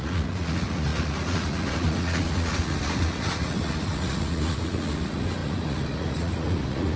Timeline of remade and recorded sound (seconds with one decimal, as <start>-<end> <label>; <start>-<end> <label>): 0.0-7.0 remade